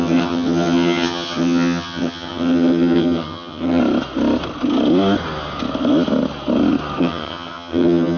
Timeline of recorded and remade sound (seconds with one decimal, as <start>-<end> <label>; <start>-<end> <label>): 0.0-3.8 remade; 3.8-7.0 recorded; 7.0-8.2 remade